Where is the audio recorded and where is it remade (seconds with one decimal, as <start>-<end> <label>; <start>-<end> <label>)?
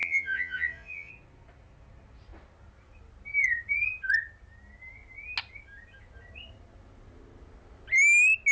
0.0-1.1 remade; 1.1-8.5 recorded